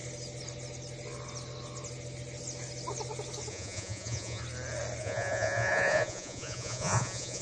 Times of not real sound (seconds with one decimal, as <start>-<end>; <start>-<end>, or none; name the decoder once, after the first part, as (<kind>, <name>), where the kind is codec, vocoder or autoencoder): 3.5-4.4 (vocoder, Vocos); 5.0-7.4